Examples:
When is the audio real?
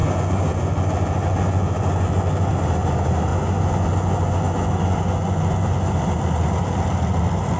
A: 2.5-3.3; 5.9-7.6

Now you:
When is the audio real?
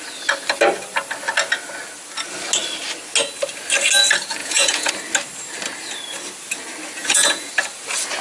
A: 0.0-4.4; 4.9-7.0; 7.5-8.2